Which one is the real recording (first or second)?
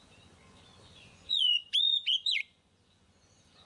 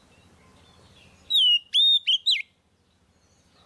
second